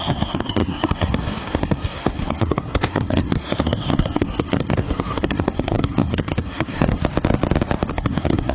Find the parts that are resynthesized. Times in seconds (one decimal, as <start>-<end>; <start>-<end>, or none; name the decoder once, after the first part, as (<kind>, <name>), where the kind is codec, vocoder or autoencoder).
0.0-7.0 (codec, SNAC); 7.9-8.5